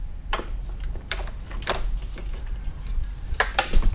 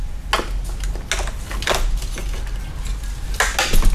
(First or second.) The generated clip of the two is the first